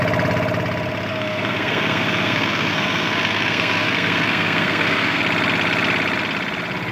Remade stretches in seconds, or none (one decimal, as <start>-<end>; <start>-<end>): 1.1-5.2